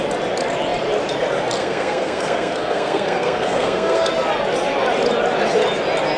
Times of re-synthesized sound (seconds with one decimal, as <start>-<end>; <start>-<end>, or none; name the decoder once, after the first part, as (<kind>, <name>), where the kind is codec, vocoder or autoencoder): 1.6-4.1 (codec, SNAC)